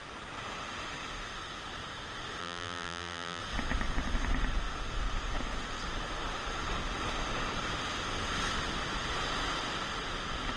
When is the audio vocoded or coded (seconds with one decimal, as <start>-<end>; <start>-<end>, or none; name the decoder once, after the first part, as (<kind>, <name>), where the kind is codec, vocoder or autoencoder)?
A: 2.4-3.4 (vocoder, BigVGAN v2)